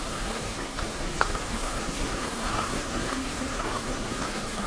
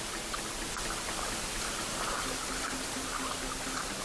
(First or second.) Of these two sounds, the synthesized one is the first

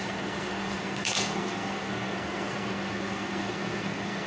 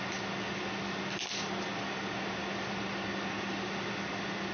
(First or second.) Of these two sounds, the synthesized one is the first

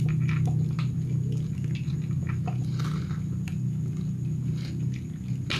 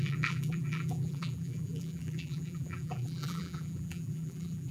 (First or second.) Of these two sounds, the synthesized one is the second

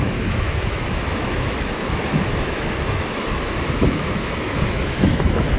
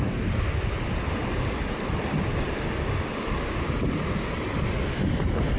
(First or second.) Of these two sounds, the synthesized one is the first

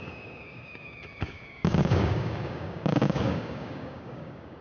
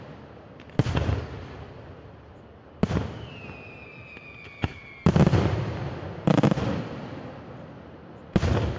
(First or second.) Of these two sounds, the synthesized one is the first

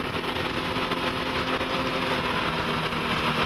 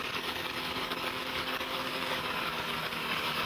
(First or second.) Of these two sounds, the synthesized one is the second